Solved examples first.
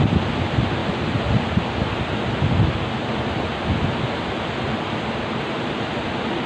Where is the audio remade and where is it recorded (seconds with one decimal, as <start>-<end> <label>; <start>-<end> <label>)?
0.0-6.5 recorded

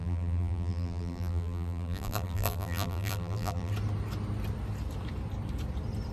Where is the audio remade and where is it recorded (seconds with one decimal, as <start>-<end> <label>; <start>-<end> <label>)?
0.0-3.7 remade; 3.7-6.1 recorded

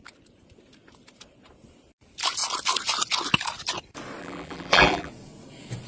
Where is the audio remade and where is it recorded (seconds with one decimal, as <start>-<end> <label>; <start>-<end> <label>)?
0.0-4.2 recorded; 4.2-5.1 remade; 5.1-5.9 recorded

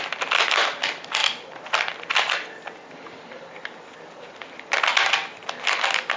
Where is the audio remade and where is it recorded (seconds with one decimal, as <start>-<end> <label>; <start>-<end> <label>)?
0.0-6.2 recorded

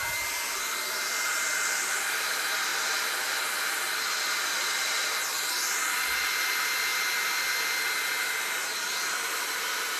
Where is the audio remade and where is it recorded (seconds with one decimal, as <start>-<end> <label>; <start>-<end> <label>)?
0.0-2.7 recorded; 2.7-4.6 remade; 4.6-10.0 recorded

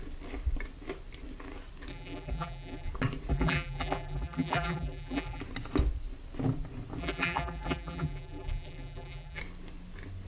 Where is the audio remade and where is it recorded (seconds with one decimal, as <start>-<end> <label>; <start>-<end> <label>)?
0.0-1.9 recorded; 1.9-2.9 remade; 2.9-3.3 recorded; 3.3-5.4 remade; 5.4-7.0 recorded; 7.0-9.4 remade; 9.4-10.3 recorded

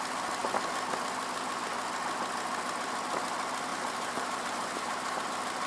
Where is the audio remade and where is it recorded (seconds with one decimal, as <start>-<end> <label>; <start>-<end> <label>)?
0.0-3.7 recorded; 3.7-5.2 remade; 5.2-5.7 recorded